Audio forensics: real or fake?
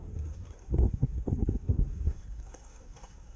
fake